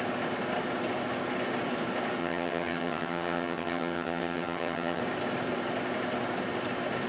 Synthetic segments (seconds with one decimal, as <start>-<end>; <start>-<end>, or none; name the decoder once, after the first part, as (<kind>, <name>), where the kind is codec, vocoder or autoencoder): 2.2-5.0 (vocoder, HiFi-GAN)